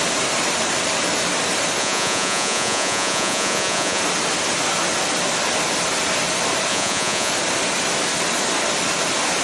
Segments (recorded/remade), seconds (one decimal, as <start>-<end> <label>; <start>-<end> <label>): 0.0-1.8 recorded; 1.8-4.0 remade; 4.0-6.7 recorded; 6.7-7.3 remade; 7.3-9.4 recorded